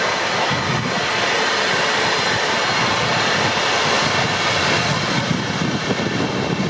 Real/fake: real